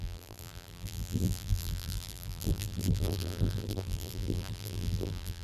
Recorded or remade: remade